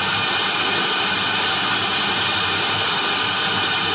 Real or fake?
real